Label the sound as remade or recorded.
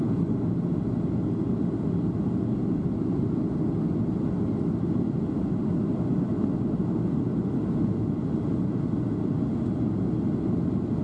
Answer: recorded